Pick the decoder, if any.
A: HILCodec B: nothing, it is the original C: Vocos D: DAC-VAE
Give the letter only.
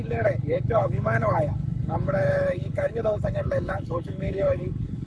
A